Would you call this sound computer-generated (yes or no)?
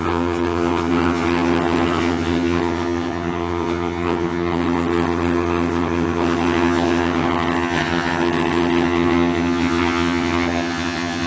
yes